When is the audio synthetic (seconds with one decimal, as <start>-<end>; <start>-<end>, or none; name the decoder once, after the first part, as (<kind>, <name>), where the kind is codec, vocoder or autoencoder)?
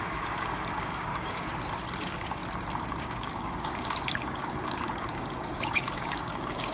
0.0-1.5 (codec, DAC); 2.0-2.4; 2.9-6.7